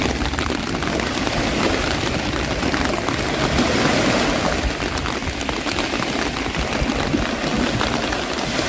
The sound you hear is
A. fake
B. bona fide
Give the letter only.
B